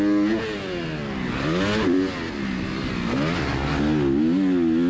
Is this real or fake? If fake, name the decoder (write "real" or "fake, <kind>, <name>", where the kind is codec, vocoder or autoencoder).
real